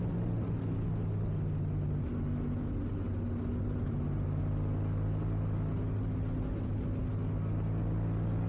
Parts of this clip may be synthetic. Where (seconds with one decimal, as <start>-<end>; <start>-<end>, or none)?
3.5-4.4